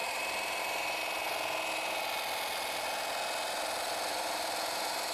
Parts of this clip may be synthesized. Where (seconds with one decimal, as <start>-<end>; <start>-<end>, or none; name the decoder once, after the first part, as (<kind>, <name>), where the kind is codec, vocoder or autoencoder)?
0.0-1.0 (vocoder, BigVGAN v2); 4.1-5.1